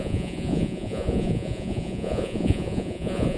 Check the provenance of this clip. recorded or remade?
remade